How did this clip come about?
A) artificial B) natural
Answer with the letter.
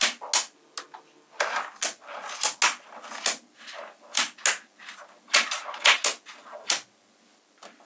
B